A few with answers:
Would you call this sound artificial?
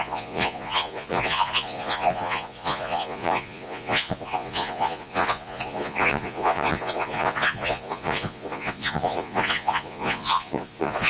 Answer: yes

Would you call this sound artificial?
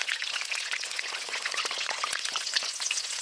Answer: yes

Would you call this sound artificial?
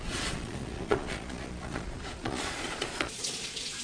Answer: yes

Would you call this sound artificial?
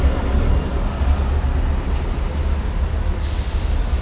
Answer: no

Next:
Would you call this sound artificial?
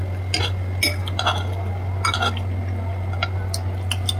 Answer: no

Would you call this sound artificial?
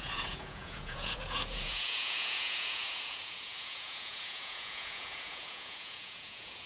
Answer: yes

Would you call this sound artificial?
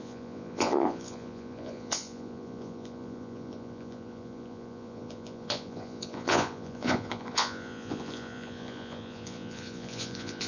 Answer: yes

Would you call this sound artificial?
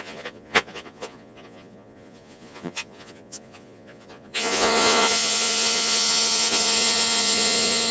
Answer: yes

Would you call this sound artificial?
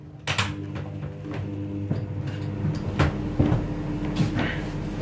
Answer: no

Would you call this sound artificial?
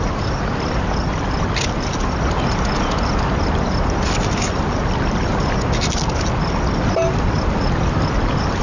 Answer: no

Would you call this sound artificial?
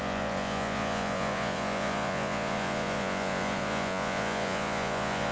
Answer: yes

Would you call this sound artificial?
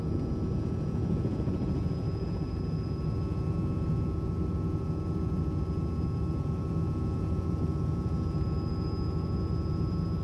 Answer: yes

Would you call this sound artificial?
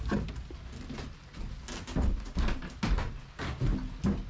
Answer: no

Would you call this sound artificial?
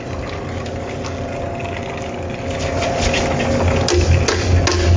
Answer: no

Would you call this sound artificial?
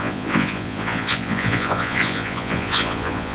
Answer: yes